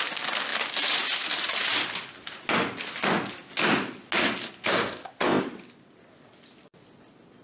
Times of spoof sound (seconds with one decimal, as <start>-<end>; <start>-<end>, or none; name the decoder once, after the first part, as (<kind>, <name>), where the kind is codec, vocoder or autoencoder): 4.9-5.4 (codec, ZipCodec)